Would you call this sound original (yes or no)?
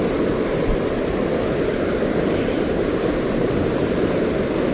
yes